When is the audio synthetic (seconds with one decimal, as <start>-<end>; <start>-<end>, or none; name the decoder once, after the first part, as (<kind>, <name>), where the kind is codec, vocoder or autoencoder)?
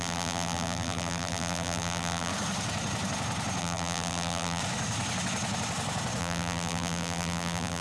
0.0-2.3 (vocoder, BigVGAN v2); 3.6-4.6; 6.2-7.8